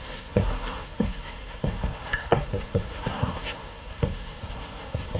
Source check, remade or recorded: remade